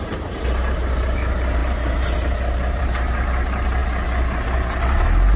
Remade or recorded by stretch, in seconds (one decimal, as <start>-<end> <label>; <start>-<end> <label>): 0.0-3.8 remade; 3.8-5.4 recorded